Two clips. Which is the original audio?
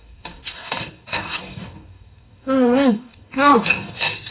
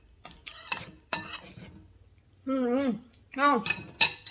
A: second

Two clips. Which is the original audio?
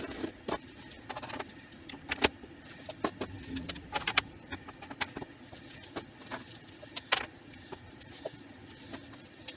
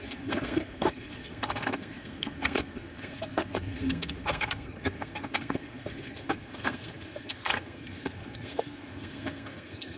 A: first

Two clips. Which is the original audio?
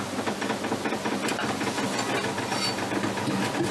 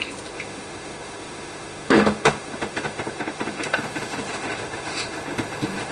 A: first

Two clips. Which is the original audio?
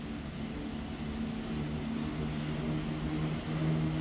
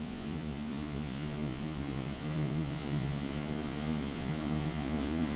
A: first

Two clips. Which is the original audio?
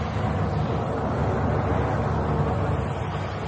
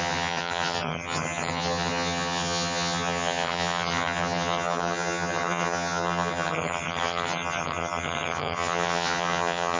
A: first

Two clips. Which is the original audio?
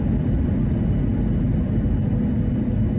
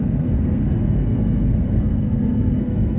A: first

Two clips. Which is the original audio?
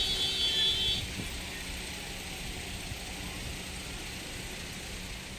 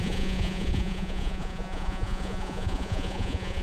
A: first